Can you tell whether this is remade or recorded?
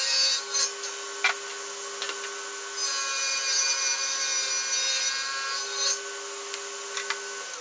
recorded